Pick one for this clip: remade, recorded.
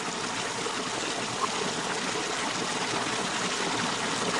recorded